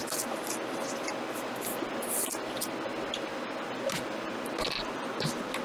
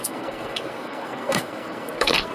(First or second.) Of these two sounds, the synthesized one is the second